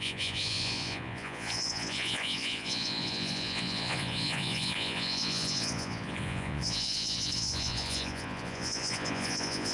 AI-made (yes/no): yes